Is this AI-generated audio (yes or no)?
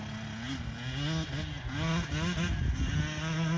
no